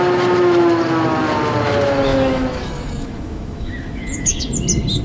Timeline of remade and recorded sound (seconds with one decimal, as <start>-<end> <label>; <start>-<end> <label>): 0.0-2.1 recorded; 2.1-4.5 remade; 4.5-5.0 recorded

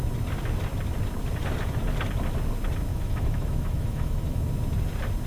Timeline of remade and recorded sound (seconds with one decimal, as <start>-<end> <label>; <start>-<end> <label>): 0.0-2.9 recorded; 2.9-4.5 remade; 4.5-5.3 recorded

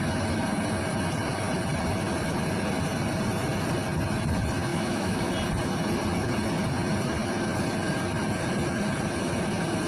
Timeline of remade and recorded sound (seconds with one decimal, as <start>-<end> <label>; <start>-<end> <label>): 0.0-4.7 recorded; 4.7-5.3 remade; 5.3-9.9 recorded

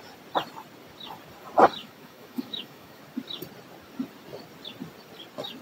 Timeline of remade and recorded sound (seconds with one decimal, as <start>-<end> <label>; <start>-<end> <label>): 0.0-1.8 recorded; 1.8-3.0 remade; 3.0-5.6 recorded